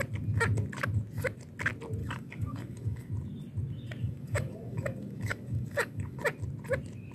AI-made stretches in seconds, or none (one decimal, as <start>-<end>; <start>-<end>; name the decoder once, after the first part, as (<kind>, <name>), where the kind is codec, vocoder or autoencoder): 2.0-3.1 (codec, DAC); 4.0-6.2